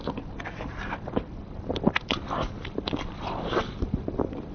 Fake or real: real